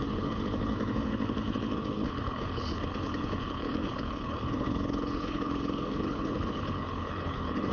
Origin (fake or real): fake